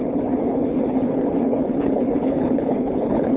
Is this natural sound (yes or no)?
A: no